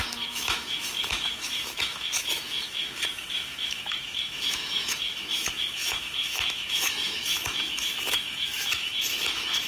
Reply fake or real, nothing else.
fake